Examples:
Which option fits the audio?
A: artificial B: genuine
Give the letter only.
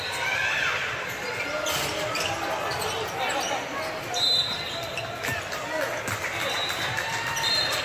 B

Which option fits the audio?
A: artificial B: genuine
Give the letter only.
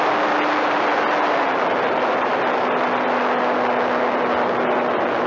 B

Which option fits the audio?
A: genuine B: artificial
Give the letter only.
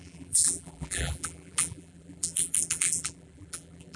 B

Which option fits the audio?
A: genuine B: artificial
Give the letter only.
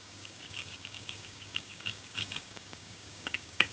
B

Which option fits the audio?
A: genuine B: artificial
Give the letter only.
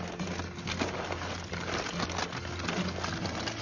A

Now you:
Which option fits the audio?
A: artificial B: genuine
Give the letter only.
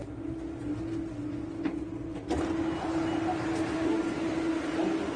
B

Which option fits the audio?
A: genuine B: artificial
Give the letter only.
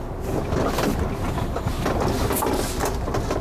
A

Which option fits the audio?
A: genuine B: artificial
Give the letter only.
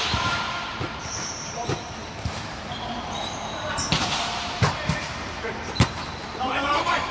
B